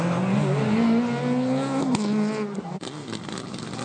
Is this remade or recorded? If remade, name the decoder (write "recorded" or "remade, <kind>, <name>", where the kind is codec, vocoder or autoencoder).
recorded